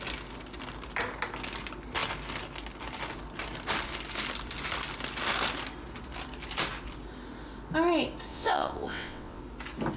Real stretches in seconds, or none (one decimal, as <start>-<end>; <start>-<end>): 0.0-8.3; 9.4-10.0